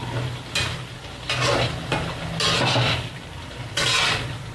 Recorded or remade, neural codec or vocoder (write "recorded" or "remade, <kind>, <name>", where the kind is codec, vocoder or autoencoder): recorded